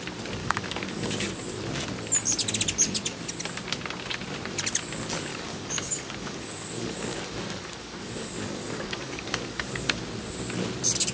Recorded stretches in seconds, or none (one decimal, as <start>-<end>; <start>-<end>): 0.0-0.4; 1.3-5.3; 10.0-11.1